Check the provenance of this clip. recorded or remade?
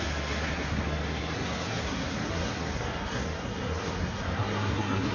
remade